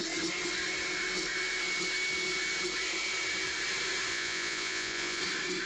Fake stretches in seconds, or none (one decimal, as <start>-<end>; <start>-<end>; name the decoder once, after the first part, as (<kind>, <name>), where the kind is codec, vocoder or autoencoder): 4.1-5.2 (vocoder, Vocos)